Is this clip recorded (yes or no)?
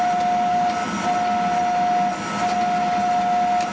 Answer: yes